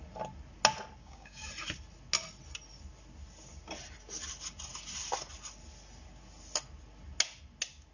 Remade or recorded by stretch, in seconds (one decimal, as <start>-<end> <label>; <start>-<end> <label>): 0.0-1.0 recorded; 1.0-1.5 remade; 1.5-7.9 recorded